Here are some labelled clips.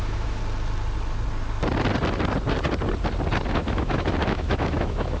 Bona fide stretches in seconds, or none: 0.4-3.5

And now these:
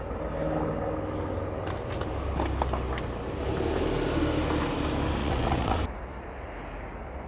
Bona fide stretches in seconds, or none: 0.0-5.2; 5.8-7.3

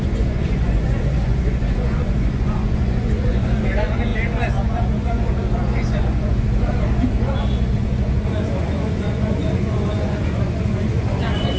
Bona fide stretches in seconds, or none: none